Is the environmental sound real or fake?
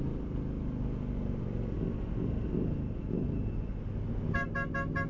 real